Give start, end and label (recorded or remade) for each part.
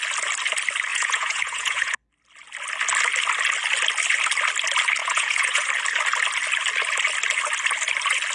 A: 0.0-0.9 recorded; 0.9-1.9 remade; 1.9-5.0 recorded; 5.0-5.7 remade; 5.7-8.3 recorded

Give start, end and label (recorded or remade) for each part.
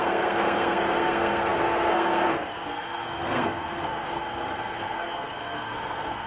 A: 0.0-6.3 remade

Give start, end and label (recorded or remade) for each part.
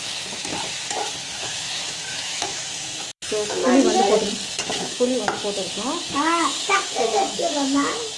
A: 0.0-0.5 remade; 0.5-1.2 recorded; 1.2-3.6 remade; 3.6-4.5 recorded; 4.5-8.2 remade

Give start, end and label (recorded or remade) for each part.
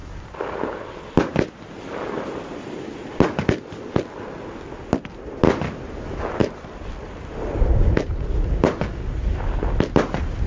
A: 0.0-10.5 recorded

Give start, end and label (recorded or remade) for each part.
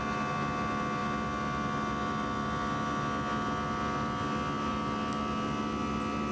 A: 0.0-6.3 recorded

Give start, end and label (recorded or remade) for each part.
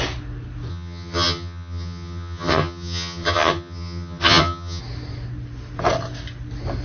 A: 0.0-0.7 recorded; 0.7-4.8 remade; 4.8-6.8 recorded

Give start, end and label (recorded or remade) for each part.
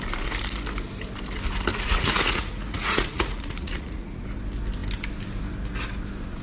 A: 0.0-1.7 recorded; 1.7-4.2 remade; 4.2-6.4 recorded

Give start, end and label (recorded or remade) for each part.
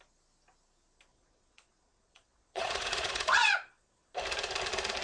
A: 0.0-1.1 recorded; 1.1-4.1 remade; 4.1-5.0 recorded